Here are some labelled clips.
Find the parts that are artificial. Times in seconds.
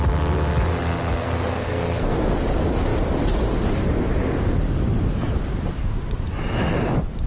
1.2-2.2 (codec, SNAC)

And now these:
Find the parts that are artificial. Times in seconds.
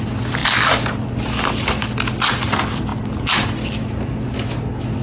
none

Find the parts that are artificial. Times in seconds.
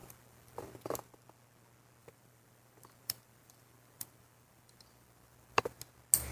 0.0-0.6 (vocoder, BigVGAN v2); 2.0-5.8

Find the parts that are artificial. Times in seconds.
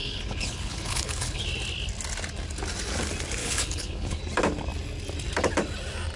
0.0-1.4 (codec, HILCodec); 3.4-4.2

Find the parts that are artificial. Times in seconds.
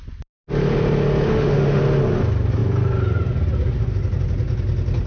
1.3-1.8 (autoencoder, DAC-VAE)